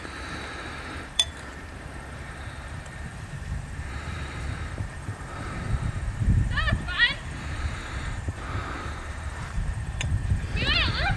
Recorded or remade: remade